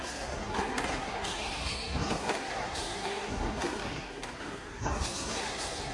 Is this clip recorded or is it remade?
remade